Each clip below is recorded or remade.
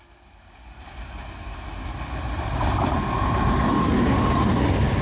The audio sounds recorded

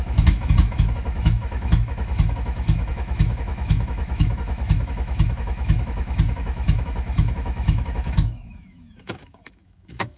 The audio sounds remade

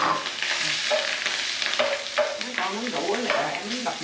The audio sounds recorded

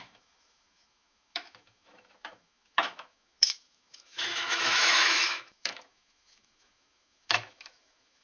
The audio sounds remade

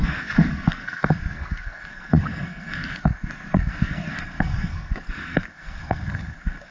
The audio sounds remade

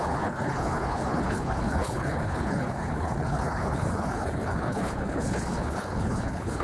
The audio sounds remade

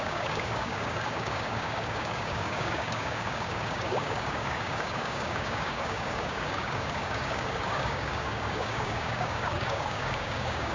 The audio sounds remade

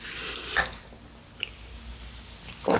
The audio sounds recorded